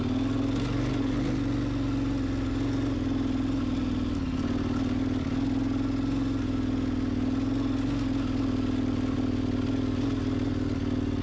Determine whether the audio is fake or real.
real